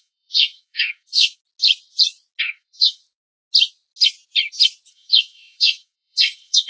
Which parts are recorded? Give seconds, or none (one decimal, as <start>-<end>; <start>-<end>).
1.4-2.4; 3.0-4.9